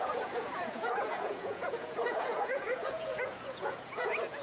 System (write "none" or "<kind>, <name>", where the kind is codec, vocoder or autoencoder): vocoder, Vocos